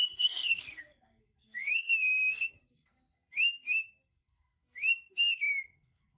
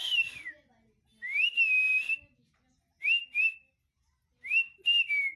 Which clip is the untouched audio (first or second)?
second